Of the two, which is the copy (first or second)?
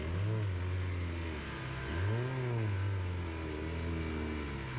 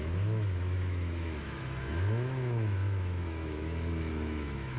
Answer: second